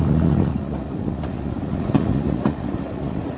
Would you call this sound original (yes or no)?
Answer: no